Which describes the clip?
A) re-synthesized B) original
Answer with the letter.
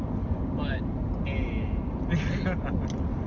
B